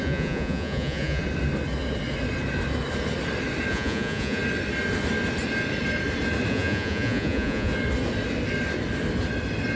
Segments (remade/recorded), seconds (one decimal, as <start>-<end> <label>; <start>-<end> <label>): 0.0-1.2 remade; 1.2-3.7 recorded; 3.7-4.4 remade; 4.4-6.5 recorded; 6.5-7.7 remade; 7.7-9.8 recorded